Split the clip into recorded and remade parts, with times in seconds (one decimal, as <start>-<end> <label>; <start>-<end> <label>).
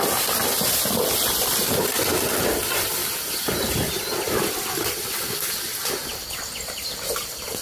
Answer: 0.0-7.6 recorded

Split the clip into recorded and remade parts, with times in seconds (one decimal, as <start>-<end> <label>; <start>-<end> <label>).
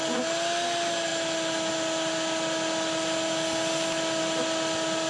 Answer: 0.0-5.1 recorded